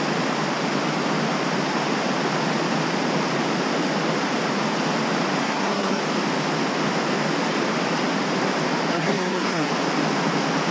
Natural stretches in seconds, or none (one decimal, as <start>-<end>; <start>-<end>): 0.0-5.4; 6.0-8.9; 9.7-10.7